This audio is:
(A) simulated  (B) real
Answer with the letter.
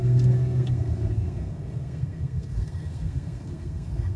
A